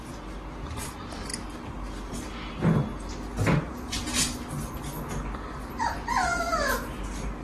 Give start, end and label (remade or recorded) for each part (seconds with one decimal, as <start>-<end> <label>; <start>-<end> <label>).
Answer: 0.0-6.3 recorded; 6.3-7.0 remade; 7.0-7.4 recorded